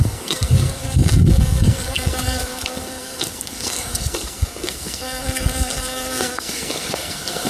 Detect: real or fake fake